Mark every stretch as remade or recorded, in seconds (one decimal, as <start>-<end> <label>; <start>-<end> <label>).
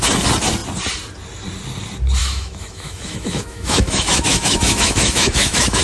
0.0-2.2 recorded; 2.2-5.8 remade